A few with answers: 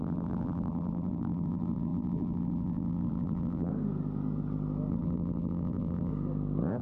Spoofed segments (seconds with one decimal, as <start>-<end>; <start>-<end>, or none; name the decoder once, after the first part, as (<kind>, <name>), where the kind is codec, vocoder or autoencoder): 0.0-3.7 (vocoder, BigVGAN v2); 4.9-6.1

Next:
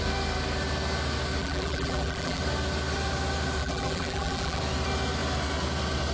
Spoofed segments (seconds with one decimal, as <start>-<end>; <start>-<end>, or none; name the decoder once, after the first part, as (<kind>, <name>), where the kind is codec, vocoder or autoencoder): 1.4-2.4 (vocoder, BigVGAN v2); 3.6-4.6

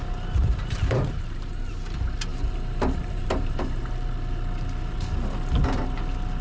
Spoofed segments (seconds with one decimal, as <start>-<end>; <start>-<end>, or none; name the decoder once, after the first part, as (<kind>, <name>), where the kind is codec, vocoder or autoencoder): 0.4-1.7 (vocoder, BigVGAN v2); 2.3-3.9

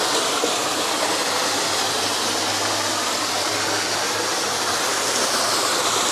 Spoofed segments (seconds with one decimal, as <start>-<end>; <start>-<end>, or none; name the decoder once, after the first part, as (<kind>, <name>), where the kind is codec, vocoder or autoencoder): none

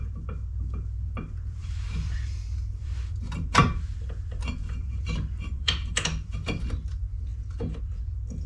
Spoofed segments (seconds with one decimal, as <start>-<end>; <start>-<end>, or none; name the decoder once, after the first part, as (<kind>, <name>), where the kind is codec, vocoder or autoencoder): 1.6-6.6 (vocoder, BigVGAN v2)

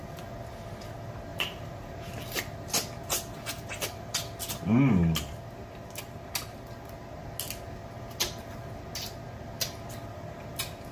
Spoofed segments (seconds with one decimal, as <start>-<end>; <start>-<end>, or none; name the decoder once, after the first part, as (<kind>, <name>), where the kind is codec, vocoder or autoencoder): 1.3-2.1 (vocoder, BigVGAN v2)

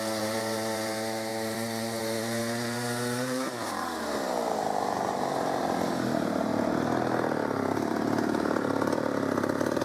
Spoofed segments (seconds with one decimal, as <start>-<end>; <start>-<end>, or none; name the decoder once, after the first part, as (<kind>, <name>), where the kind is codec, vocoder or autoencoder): 0.0-6.5 (vocoder, BigVGAN v2); 7.9-9.8

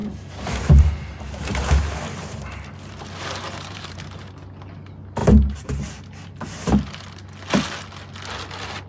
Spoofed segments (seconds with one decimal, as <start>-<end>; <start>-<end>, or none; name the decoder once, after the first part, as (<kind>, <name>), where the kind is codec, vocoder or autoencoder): 0.0-4.2 (vocoder, BigVGAN v2); 5.2-5.8